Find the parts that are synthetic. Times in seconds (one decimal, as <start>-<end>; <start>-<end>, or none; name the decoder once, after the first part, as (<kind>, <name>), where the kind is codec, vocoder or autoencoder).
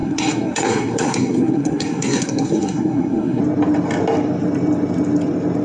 0.0-3.4 (codec, SNAC)